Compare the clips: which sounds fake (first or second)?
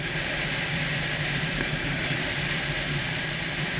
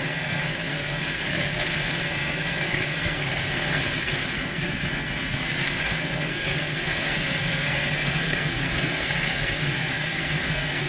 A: second